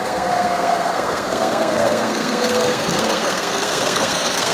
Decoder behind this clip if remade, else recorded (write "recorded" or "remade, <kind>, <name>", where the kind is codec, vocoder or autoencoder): remade, codec, SNAC